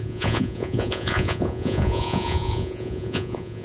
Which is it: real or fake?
fake